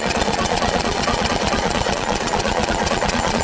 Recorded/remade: remade